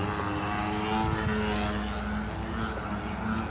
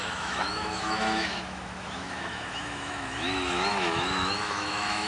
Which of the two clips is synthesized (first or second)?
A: second